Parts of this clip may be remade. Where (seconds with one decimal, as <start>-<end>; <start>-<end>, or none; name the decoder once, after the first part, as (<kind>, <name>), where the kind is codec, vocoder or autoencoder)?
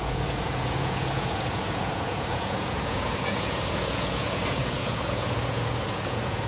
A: 0.0-6.5 (vocoder, Vocos)